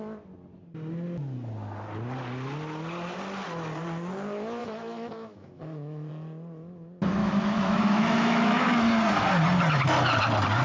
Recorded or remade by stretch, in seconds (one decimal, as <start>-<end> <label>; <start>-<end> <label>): 0.0-4.6 recorded; 4.6-6.1 remade; 6.1-7.2 recorded; 7.2-8.8 remade; 8.8-10.6 recorded

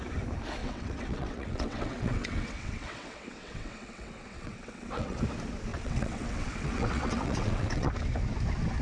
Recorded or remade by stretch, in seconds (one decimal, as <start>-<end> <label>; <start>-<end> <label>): 0.0-0.6 recorded; 0.6-5.2 remade; 5.2-5.7 recorded; 5.7-7.9 remade; 7.9-8.8 recorded

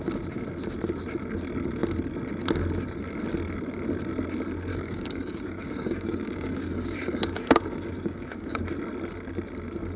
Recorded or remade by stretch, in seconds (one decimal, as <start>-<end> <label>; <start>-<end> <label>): 0.0-4.7 recorded; 4.7-8.6 remade; 8.6-10.0 recorded